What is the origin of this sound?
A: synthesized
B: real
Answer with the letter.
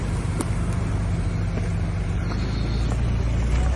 B